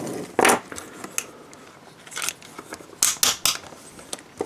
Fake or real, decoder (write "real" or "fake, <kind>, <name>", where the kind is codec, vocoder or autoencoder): real